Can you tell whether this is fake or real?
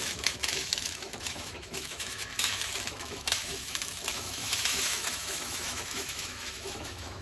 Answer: fake